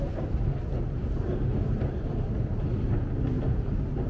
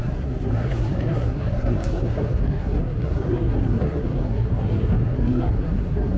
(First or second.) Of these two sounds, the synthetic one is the second